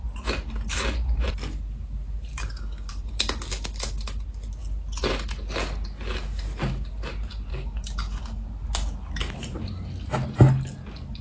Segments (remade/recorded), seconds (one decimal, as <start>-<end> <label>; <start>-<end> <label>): 0.0-2.3 recorded; 2.3-2.9 remade; 2.9-7.5 recorded; 7.5-8.2 remade; 8.2-11.2 recorded